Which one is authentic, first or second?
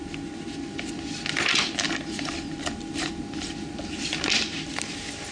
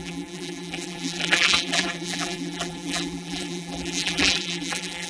first